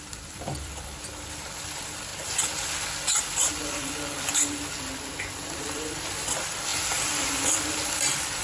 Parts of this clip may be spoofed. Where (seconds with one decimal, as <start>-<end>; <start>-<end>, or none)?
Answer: 0.0-2.1; 5.6-8.4